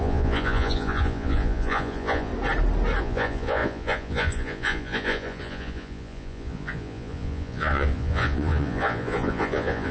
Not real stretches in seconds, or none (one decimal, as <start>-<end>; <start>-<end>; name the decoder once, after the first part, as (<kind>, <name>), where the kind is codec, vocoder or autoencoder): 0.0-2.3 (vocoder, Vocos); 3.0-9.9